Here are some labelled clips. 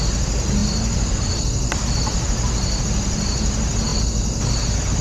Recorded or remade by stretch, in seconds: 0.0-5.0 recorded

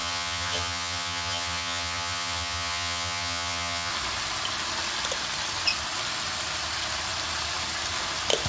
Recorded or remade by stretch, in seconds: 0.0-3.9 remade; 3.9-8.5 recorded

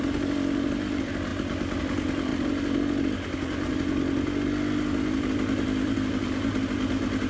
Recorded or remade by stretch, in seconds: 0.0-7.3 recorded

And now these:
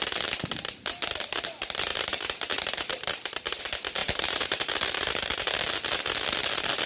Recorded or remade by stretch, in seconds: 0.0-1.9 recorded; 1.9-3.6 remade; 3.6-4.0 recorded; 4.0-5.6 remade; 5.6-6.9 recorded

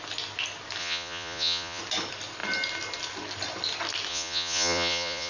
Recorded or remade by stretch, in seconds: 0.0-0.8 recorded; 0.8-1.8 remade; 1.8-4.1 recorded; 4.1-5.3 remade